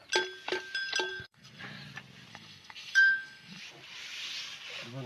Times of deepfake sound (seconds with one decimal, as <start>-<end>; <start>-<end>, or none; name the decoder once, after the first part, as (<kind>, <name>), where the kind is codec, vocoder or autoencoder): 1.1-1.6 (codec, SNAC); 2.3-3.6